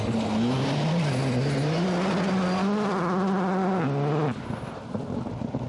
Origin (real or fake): real